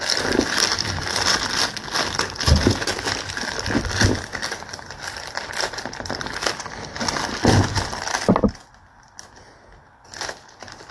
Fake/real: real